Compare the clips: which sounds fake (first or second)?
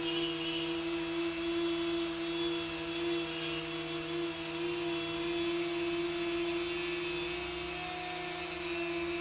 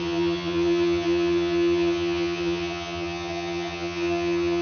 second